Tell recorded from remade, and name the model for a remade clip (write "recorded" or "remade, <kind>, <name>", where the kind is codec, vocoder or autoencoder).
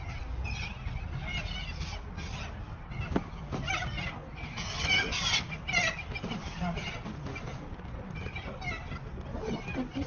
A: recorded